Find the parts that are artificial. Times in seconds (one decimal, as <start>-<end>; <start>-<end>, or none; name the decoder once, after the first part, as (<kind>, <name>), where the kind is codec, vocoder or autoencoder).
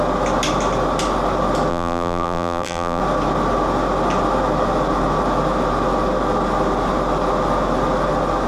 1.7-3.0 (vocoder, BigVGAN v2)